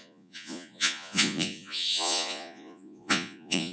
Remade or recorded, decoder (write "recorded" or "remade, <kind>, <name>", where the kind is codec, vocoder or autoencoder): remade, vocoder, Vocos